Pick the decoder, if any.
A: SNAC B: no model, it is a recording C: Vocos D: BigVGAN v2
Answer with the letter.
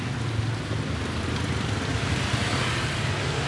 B